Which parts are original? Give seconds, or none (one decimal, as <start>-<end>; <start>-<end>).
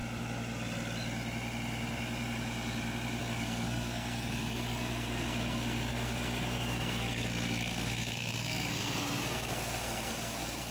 0.0-3.2